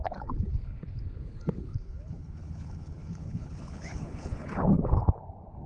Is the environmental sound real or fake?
fake